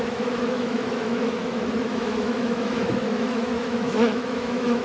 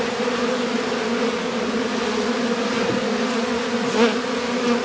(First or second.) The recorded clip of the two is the second